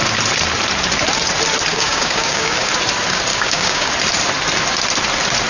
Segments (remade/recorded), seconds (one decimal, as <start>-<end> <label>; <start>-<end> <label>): 0.0-1.7 recorded; 1.7-2.7 remade; 2.7-3.3 recorded; 3.3-3.9 remade; 3.9-5.5 recorded